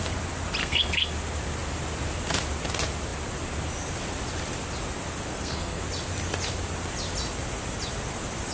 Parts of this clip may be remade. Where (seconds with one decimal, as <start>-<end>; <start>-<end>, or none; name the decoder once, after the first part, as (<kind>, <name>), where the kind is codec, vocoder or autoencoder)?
0.6-1.1 (codec, SNAC); 5.3-5.8